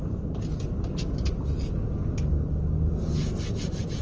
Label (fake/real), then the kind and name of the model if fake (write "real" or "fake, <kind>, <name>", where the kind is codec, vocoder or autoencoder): real